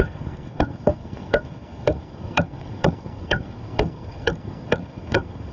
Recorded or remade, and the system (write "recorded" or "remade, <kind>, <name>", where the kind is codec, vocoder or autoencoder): remade, codec, SNAC